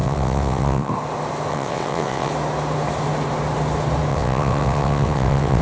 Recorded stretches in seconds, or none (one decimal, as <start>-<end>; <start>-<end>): 0.9-1.5; 2.3-4.1